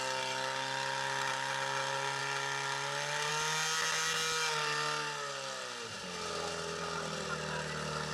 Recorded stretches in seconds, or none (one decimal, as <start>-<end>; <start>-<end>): 0.0-8.1